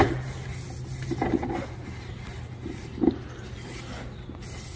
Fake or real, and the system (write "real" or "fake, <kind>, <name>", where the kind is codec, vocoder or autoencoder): real